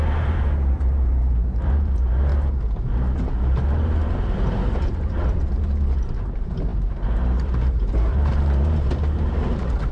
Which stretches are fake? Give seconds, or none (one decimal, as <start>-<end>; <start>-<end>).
0.0-2.3; 3.4-9.9